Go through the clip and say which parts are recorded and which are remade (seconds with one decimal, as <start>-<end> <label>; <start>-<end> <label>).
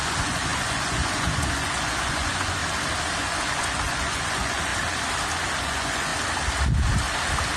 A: 0.0-2.6 remade; 2.6-3.2 recorded; 3.2-4.7 remade; 4.7-5.6 recorded; 5.6-6.1 remade; 6.1-7.6 recorded